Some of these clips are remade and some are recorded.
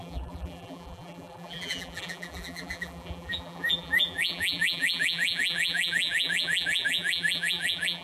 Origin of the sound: remade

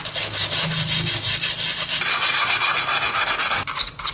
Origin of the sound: recorded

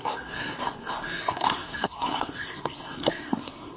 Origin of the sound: remade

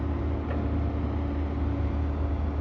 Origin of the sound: recorded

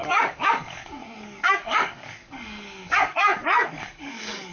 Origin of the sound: remade